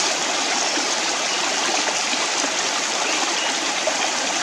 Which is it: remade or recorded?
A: recorded